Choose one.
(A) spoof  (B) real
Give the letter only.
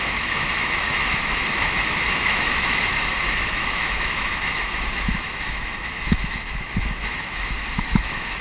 A